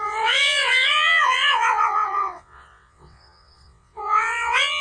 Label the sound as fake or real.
fake